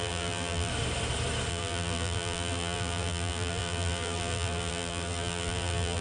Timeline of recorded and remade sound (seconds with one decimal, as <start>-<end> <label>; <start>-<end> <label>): 0.0-0.7 remade; 0.7-1.5 recorded; 1.5-6.0 remade